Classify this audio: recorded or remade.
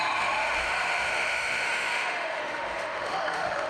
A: remade